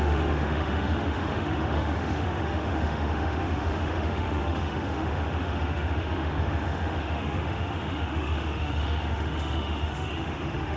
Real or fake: fake